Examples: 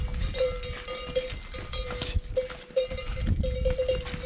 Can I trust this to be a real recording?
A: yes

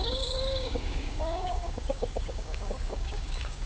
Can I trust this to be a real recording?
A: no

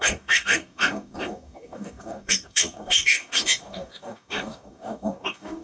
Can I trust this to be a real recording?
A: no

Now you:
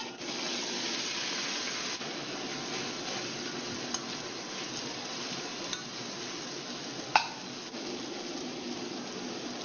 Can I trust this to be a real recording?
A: yes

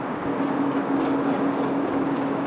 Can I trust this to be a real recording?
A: no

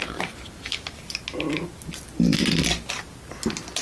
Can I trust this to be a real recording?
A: yes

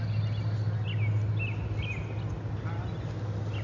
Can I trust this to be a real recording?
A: yes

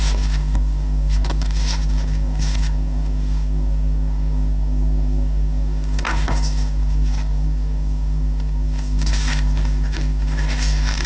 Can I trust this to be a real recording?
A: no